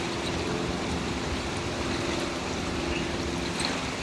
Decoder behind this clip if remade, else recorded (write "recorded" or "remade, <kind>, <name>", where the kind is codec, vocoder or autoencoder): recorded